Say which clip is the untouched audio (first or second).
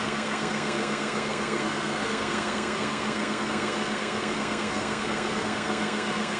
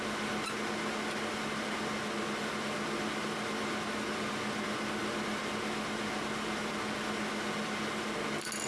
second